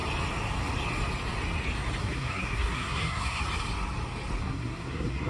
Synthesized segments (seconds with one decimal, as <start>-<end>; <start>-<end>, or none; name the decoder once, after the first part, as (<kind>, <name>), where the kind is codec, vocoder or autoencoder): 2.0-3.4 (codec, SNAC); 4.4-5.3